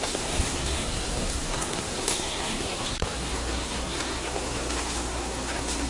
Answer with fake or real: fake